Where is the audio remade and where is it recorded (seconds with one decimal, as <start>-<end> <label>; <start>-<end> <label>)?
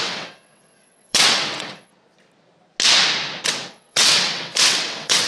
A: 0.0-1.9 remade; 1.9-3.5 recorded; 3.5-5.3 remade